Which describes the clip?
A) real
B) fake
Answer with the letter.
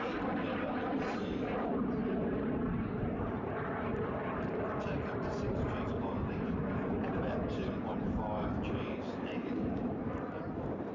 B